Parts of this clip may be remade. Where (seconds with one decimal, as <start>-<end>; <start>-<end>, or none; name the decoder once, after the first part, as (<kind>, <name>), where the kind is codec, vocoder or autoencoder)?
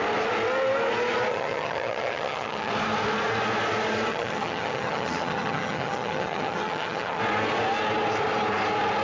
1.3-2.7 (vocoder, HiFi-GAN); 4.1-7.2